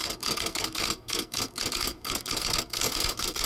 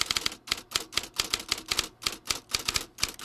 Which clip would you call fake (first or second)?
first